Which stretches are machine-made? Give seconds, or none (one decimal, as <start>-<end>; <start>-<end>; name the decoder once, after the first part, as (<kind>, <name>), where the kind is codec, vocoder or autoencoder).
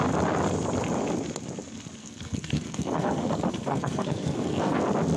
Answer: 2.0-4.8 (codec, SNAC)